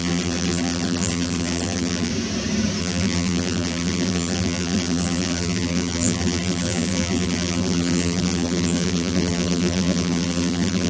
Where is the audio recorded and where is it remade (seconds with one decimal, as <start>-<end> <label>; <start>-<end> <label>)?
0.0-2.1 remade; 2.1-2.8 recorded; 2.8-10.9 remade